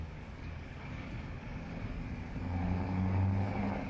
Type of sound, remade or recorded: remade